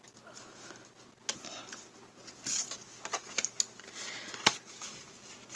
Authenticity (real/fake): real